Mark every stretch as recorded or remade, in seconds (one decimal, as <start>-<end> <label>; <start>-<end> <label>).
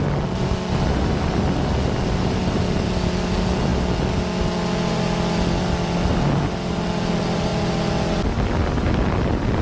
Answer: 0.0-9.6 recorded